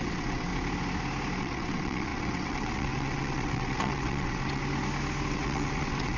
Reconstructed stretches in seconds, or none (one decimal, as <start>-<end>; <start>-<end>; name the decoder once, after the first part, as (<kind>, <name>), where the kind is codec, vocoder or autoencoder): 0.0-0.5 (vocoder, WaveNeXt); 1.4-4.6; 5.3-6.2